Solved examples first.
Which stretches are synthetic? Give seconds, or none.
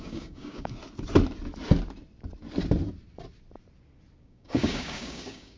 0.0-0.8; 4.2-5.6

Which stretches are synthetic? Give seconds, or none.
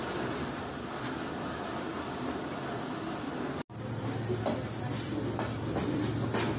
none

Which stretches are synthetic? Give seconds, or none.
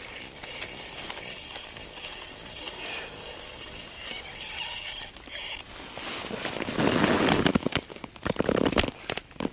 7.6-8.1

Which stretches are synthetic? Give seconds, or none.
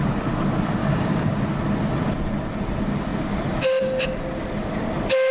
0.8-1.3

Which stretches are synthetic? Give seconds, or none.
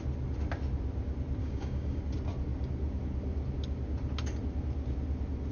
1.4-2.0